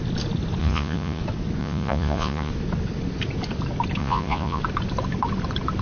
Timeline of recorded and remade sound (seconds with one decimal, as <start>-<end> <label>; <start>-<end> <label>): 0.0-0.6 recorded; 0.6-1.2 remade; 1.2-1.6 recorded; 1.6-2.5 remade; 2.5-4.0 recorded; 4.0-4.6 remade; 4.6-5.8 recorded